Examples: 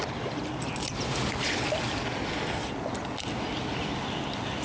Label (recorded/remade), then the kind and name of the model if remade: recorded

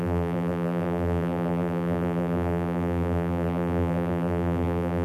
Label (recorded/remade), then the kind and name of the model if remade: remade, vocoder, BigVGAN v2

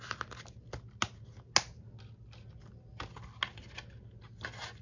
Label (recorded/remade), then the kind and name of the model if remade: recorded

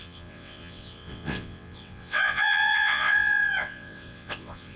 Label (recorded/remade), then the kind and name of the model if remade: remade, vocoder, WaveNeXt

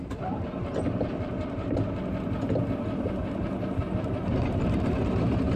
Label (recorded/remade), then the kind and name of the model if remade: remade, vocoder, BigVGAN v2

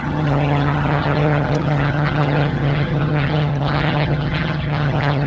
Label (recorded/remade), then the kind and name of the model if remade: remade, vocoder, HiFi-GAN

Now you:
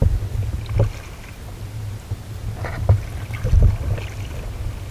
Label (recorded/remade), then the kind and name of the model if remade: recorded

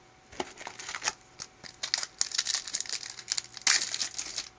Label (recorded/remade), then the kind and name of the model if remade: recorded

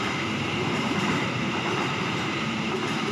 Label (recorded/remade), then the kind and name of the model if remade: remade, vocoder, BigVGAN v2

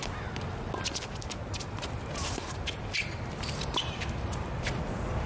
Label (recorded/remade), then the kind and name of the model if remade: recorded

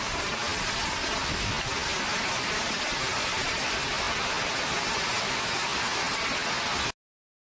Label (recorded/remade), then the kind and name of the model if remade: recorded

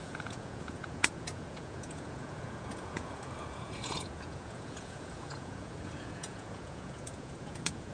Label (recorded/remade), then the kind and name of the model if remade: remade, vocoder, Vocos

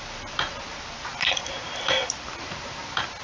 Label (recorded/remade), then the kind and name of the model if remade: recorded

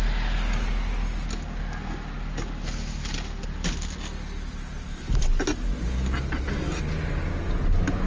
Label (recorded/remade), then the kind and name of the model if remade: recorded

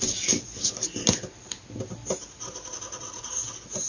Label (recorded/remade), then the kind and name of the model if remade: recorded